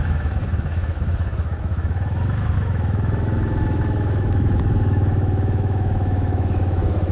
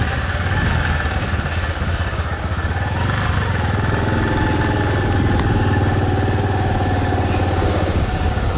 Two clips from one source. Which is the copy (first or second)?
first